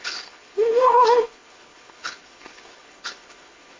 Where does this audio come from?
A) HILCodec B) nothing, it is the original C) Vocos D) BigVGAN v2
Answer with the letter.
A